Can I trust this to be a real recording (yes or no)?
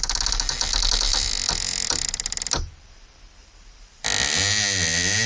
yes